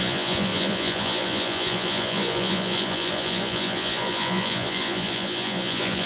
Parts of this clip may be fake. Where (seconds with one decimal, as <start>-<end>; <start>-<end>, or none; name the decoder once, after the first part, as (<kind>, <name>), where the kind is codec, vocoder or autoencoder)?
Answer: 0.0-6.1 (vocoder, Vocos)

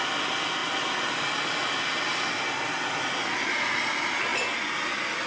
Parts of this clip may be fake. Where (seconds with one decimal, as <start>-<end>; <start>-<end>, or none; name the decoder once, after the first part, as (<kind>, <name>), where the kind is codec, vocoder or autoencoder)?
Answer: none

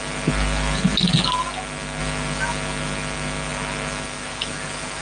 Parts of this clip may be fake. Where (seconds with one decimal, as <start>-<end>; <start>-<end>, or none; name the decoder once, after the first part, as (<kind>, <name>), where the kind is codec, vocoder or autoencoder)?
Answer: none

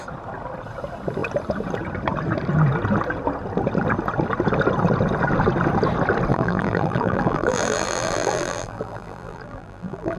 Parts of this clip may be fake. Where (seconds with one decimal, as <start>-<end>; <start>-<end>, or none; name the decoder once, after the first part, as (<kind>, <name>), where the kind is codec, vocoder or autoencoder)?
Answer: 6.3-10.2 (vocoder, BigVGAN v2)